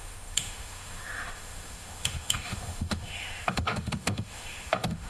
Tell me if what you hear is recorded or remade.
remade